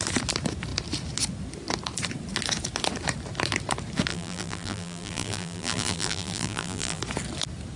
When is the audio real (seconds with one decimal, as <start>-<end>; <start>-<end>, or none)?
0.0-4.1; 7.0-7.8